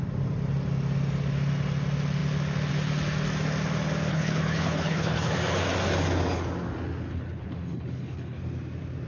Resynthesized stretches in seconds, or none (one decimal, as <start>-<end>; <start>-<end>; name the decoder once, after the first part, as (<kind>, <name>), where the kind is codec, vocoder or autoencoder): 4.1-5.3 (codec, HILCodec); 7.1-8.4